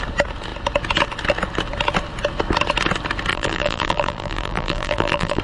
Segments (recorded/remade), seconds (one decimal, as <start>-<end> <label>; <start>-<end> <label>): 0.0-3.3 recorded; 3.3-5.4 remade